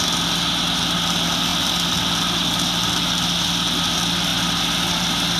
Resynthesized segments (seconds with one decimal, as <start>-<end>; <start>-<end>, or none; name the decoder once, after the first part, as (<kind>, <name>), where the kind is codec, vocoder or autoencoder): none